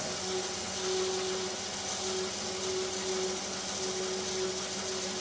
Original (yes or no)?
yes